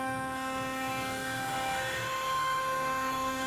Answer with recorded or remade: remade